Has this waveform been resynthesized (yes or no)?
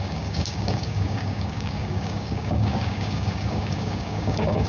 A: yes